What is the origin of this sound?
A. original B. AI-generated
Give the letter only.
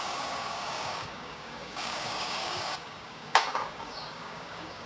B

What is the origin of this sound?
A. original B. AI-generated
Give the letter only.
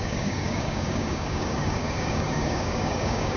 B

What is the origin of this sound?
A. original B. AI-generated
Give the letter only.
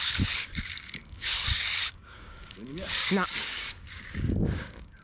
B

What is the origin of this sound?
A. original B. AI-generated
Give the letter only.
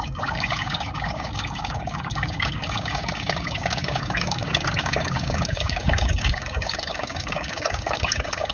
B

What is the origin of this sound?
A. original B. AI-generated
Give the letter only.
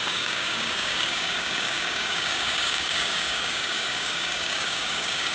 B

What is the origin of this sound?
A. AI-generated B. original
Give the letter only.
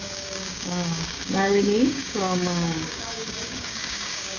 A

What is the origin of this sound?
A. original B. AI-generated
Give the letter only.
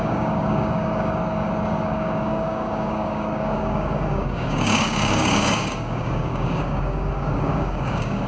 B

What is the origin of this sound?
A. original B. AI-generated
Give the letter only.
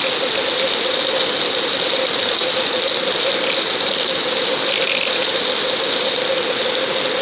A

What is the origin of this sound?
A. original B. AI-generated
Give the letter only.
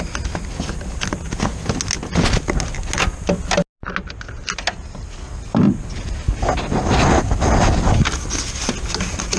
A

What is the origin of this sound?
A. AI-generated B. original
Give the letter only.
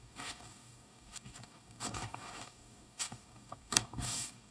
A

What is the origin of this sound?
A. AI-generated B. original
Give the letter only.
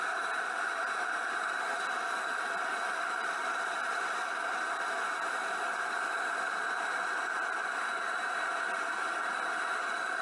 B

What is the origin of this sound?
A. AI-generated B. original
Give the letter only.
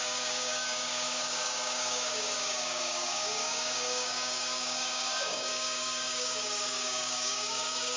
A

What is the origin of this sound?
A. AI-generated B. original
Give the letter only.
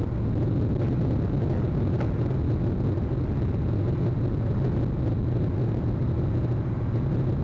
B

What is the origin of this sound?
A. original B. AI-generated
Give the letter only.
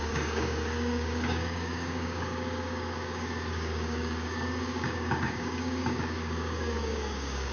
B